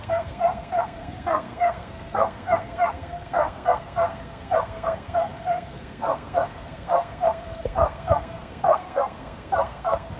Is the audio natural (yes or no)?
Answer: no